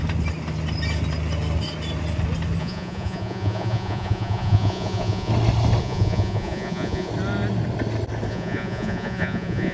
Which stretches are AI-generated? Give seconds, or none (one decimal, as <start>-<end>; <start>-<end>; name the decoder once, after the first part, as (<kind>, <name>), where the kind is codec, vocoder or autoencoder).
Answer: 2.6-5.3 (vocoder, Vocos); 5.8-7.1; 8.3-9.7